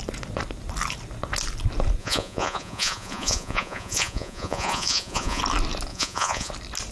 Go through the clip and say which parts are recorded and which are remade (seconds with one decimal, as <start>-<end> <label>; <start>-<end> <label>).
0.0-2.0 recorded; 2.0-5.4 remade; 5.4-5.9 recorded; 5.9-6.5 remade; 6.5-6.9 recorded